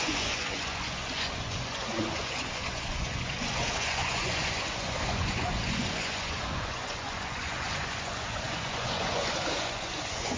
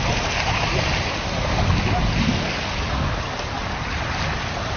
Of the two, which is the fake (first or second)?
first